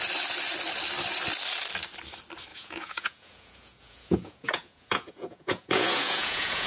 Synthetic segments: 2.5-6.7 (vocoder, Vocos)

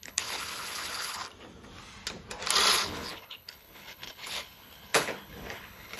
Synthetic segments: 0.0-1.2 (codec, HILCodec); 2.7-6.0

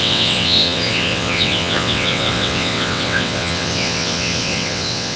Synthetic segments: 0.0-5.2 (vocoder, WaveNeXt)